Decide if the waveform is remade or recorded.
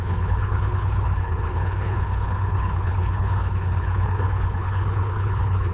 remade